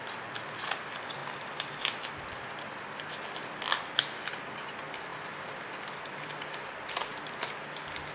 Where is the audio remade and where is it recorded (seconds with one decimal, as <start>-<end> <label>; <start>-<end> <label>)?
0.0-8.1 recorded